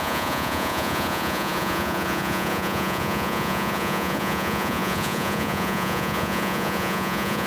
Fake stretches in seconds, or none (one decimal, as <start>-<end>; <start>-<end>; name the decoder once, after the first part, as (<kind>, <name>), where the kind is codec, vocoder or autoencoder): 0.0-7.5 (vocoder, Vocos)